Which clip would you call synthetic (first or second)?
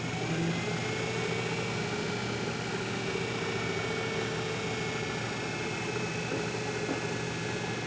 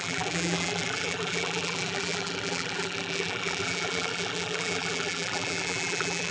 second